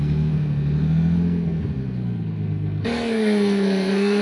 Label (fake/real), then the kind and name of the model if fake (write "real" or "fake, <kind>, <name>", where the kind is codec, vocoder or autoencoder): fake, codec, SNAC